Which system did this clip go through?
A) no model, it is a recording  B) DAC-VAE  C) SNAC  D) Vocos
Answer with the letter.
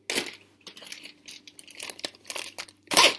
A